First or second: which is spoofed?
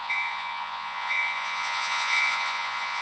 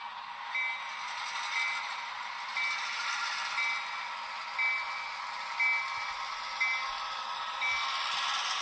first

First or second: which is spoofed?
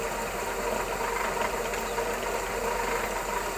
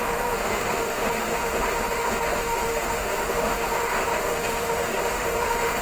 second